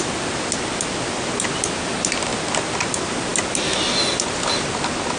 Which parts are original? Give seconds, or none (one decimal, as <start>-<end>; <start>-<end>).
0.0-5.2